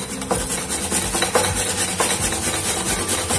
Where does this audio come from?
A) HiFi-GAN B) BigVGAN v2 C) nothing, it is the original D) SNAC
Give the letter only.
C